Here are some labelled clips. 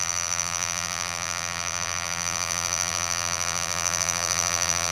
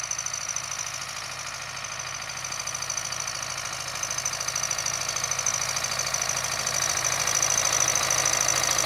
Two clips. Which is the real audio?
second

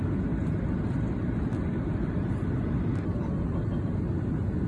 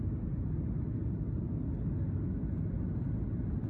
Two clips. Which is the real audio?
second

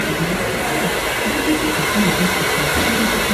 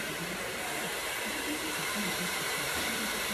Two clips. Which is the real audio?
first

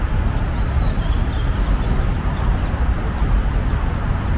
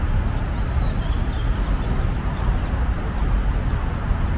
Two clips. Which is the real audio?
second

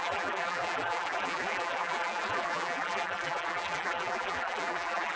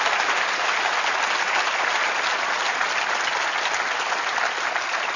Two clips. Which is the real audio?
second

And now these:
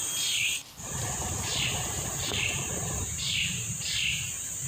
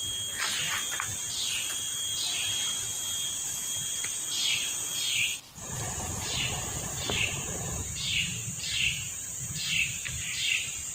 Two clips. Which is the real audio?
second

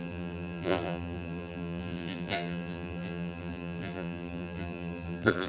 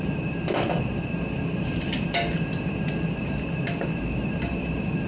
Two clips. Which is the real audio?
second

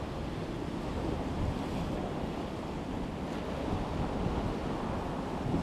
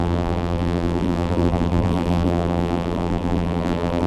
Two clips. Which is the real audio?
first